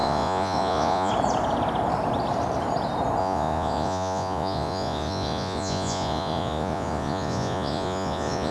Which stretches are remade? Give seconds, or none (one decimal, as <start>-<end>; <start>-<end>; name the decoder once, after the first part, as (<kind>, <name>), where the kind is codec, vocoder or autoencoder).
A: 0.0-1.1 (vocoder, Vocos); 3.2-8.5